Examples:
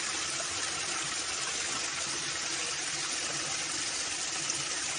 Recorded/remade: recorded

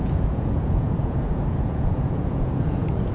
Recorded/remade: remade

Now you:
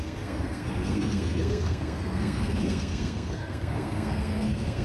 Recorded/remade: remade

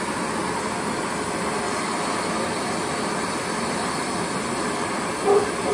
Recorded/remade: recorded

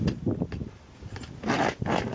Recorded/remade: recorded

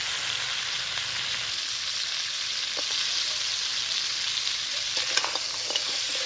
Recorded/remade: recorded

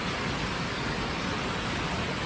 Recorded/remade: recorded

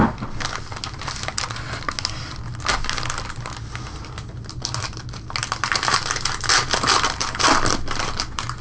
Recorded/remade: recorded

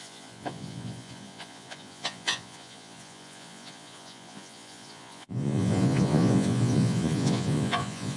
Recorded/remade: remade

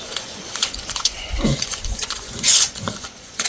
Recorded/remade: remade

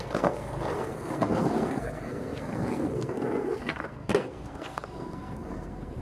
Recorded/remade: remade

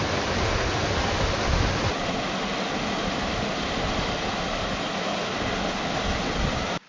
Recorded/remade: recorded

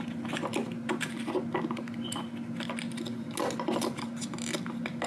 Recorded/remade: recorded